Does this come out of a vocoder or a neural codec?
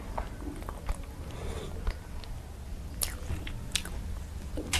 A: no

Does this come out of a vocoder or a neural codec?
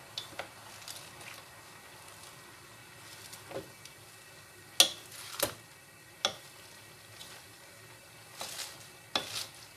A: no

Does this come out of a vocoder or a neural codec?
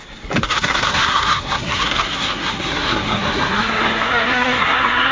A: yes